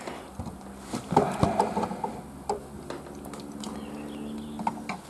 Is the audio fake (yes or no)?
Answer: no